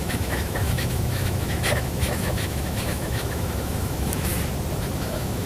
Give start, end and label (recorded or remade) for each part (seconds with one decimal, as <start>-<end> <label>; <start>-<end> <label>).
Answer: 0.0-4.3 remade; 4.3-4.9 recorded; 4.9-5.5 remade